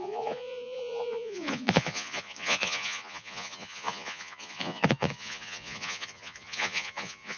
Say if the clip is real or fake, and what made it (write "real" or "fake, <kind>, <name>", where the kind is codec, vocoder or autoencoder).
fake, vocoder, Vocos